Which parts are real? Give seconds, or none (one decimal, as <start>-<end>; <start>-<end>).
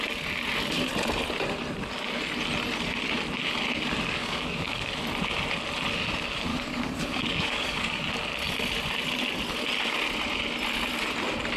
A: 0.0-4.2; 4.9-6.5; 8.1-11.6